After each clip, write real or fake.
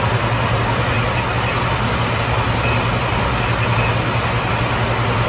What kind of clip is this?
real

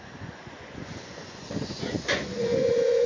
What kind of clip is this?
fake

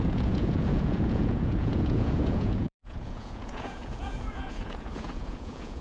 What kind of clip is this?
fake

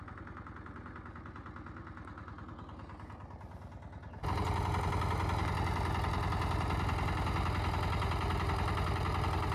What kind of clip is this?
real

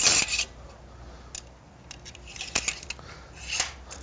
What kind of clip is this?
real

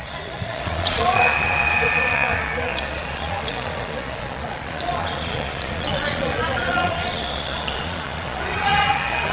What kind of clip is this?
fake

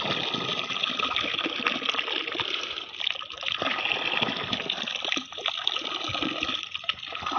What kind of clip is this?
real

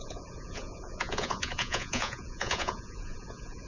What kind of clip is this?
fake